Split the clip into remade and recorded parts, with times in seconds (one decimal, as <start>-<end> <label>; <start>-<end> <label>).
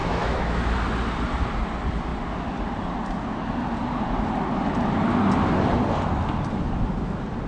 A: 0.0-0.6 remade; 0.6-7.5 recorded